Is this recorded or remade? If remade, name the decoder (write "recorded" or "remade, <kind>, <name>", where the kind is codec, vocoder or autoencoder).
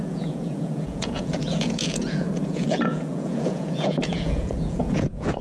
remade, vocoder, Vocos